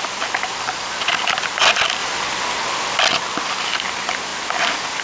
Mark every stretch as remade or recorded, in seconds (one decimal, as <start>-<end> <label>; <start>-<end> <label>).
0.0-5.0 recorded